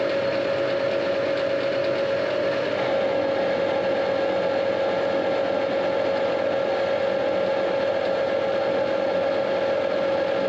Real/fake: real